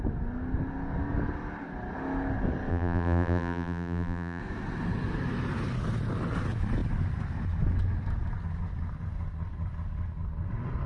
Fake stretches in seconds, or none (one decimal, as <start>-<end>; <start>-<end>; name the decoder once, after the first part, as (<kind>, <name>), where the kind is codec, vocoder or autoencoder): 2.7-4.4 (vocoder, BigVGAN v2)